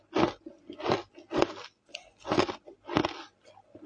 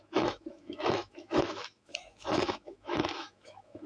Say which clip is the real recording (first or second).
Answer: first